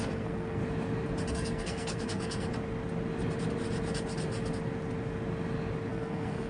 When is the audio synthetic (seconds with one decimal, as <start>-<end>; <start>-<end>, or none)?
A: 0.0-0.6; 1.3-2.5; 5.9-6.5